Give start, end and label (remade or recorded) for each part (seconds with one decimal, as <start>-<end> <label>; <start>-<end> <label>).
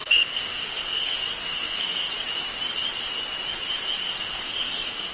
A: 0.0-1.1 remade; 1.1-1.5 recorded; 1.5-2.1 remade; 2.1-4.0 recorded; 4.0-5.1 remade